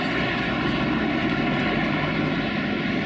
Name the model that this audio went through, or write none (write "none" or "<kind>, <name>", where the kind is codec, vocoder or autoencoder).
none